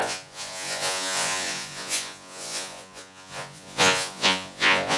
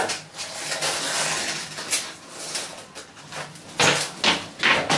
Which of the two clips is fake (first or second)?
first